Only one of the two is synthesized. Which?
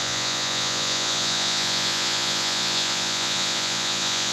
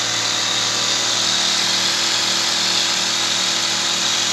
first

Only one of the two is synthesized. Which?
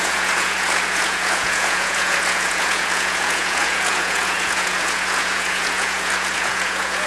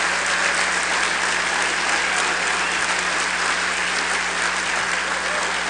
first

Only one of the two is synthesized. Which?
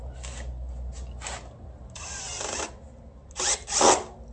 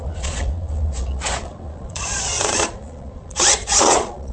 second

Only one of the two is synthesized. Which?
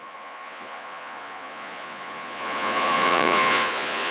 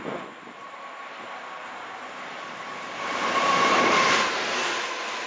first